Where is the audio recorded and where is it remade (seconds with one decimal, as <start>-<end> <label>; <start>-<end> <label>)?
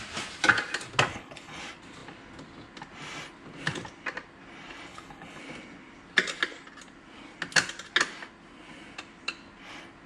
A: 0.0-1.1 recorded; 1.1-1.6 remade; 1.6-4.9 recorded; 4.9-5.4 remade; 5.4-10.1 recorded